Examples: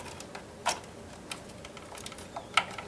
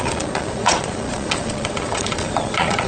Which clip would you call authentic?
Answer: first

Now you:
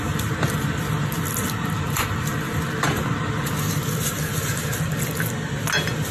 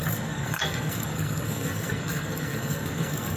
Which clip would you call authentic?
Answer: first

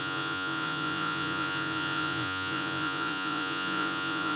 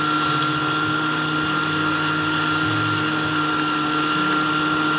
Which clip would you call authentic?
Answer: second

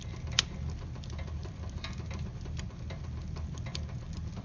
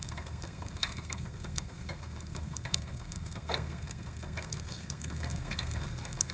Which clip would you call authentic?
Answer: first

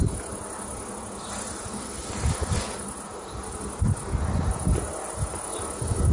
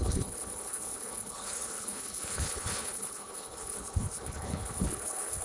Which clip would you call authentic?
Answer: first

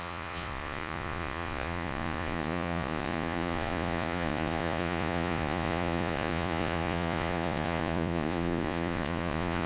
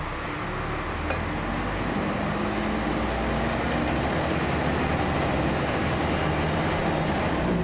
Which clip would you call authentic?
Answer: second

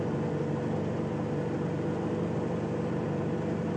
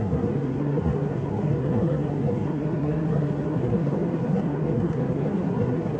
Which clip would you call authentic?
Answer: first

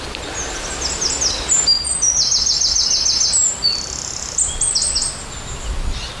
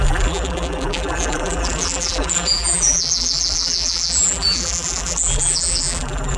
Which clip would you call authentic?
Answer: first